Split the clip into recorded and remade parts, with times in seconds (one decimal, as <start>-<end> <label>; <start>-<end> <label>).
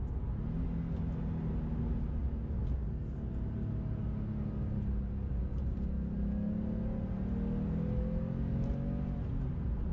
0.0-9.9 recorded